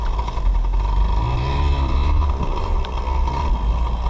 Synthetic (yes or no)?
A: no